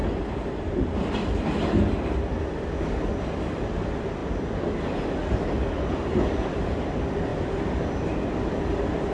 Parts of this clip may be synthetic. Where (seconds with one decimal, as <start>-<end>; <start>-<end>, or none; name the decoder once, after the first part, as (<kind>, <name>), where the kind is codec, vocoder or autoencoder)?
none